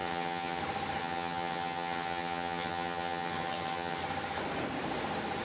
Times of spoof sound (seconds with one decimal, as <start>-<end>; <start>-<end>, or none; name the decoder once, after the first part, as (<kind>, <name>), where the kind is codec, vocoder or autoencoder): 0.0-0.6 (vocoder, HiFi-GAN); 1.0-4.0